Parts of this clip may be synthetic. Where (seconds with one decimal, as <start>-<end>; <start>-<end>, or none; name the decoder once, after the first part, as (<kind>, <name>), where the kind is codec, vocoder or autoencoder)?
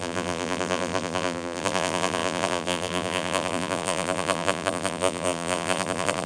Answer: 0.0-6.3 (vocoder, BigVGAN v2)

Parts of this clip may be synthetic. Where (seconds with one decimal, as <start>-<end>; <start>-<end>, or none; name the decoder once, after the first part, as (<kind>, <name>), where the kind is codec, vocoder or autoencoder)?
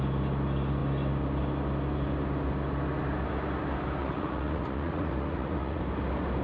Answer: 4.0-5.8 (vocoder, Vocos)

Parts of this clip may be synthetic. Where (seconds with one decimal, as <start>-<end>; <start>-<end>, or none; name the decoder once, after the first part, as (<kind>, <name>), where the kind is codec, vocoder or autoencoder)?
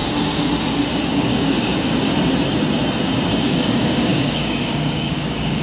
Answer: 1.1-2.1 (codec, DAC); 3.4-5.6